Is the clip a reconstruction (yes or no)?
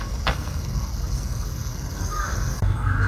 yes